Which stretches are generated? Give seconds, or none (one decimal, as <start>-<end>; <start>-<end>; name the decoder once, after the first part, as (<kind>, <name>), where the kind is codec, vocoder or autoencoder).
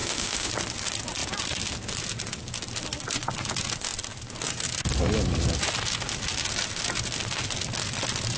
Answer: 0.0-0.5 (autoencoder, DAC-VAE)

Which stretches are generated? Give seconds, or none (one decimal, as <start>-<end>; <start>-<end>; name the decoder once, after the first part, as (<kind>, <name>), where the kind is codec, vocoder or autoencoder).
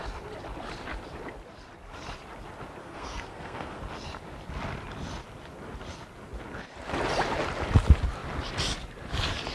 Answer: 2.8-3.8 (codec, SNAC)